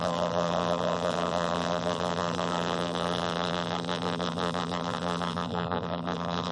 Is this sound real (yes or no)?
no